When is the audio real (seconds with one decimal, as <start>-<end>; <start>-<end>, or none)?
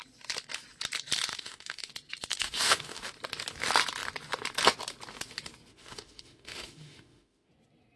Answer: 0.0-1.3; 1.9-2.3; 3.1-5.7; 7.5-8.0